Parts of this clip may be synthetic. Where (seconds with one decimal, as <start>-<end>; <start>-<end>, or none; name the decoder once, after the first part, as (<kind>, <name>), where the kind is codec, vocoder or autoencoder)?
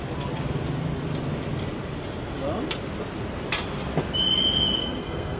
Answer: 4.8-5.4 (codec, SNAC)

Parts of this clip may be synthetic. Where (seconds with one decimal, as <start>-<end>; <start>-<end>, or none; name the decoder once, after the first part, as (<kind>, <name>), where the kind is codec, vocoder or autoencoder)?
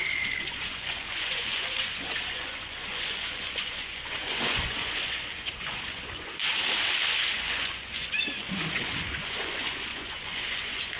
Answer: 0.0-6.5 (vocoder, Vocos); 7.3-11.0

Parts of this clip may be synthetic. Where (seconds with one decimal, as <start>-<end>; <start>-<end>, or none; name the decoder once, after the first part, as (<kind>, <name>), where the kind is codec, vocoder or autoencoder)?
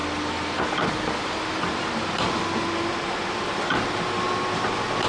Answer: none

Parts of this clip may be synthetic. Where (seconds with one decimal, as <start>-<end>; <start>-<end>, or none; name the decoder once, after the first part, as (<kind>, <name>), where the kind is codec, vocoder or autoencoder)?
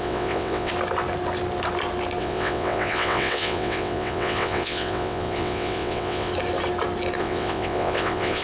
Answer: 0.0-0.7 (vocoder, WaveNeXt); 2.2-6.3; 7.2-8.4